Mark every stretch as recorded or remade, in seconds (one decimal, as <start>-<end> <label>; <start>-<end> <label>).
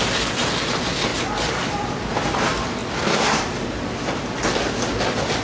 0.0-5.4 recorded